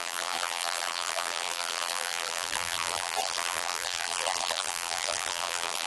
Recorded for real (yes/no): no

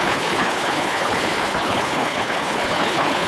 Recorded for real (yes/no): no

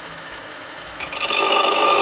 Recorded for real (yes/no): no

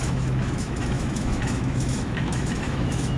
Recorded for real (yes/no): no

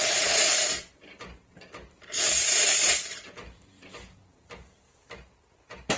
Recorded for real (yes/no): no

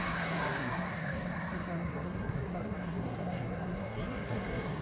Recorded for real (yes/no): no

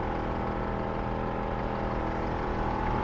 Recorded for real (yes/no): yes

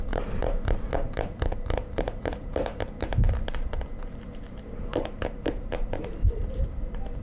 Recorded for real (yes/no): no